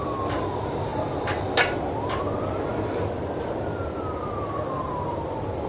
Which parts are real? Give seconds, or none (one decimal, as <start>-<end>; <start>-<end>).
0.0-5.7